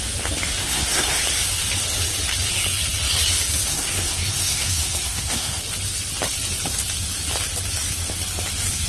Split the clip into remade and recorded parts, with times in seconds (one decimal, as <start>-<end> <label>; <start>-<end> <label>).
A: 0.0-0.6 recorded; 0.6-1.2 remade; 1.2-3.7 recorded; 3.7-5.6 remade; 5.6-8.9 recorded